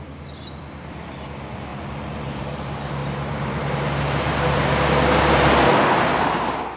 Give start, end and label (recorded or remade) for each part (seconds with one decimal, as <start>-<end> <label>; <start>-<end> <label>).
0.0-1.7 recorded; 1.7-2.4 remade; 2.4-3.0 recorded; 3.0-4.0 remade; 4.0-6.8 recorded